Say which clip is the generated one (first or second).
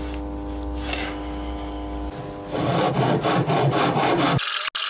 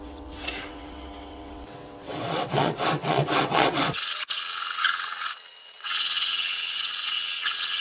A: second